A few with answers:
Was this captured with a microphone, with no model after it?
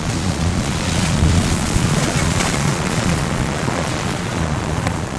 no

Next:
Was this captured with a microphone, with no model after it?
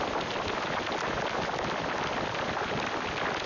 yes